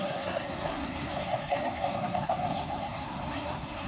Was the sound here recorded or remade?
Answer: remade